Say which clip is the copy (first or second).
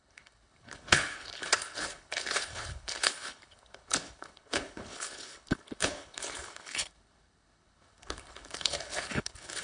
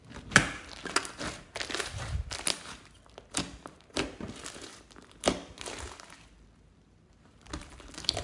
first